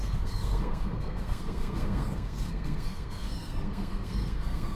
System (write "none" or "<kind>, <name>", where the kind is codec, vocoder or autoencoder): codec, SNAC